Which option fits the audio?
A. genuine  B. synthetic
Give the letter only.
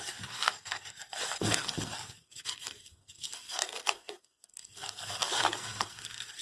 B